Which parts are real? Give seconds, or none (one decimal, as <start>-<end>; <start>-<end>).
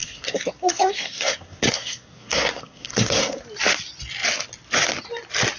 3.4-5.6